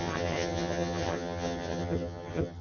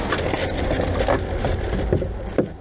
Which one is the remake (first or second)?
first